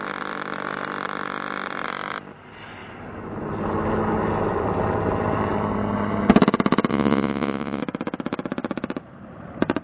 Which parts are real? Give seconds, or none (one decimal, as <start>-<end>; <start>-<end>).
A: 0.0-6.9; 7.8-9.8